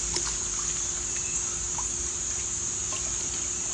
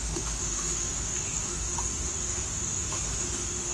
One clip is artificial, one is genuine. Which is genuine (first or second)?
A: first